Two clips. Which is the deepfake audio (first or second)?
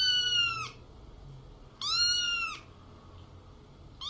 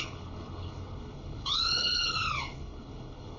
second